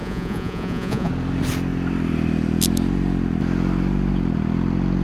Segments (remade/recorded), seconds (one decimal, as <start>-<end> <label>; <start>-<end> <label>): 0.0-1.1 remade; 1.1-5.0 recorded